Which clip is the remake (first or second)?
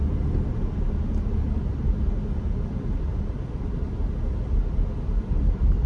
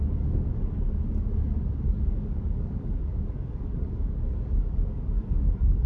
second